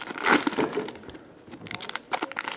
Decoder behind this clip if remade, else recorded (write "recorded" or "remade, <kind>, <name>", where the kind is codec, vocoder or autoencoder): recorded